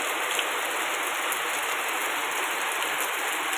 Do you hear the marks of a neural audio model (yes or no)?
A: no